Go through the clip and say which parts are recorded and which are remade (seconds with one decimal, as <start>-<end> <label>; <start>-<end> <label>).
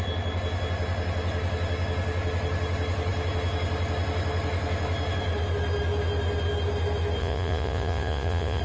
0.0-7.2 recorded; 7.2-8.6 remade